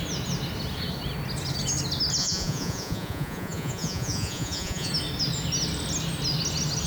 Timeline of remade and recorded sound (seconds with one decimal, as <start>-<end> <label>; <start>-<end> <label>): 0.0-2.2 recorded; 2.2-4.9 remade; 4.9-6.9 recorded